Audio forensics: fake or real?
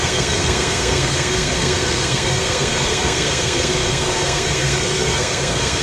fake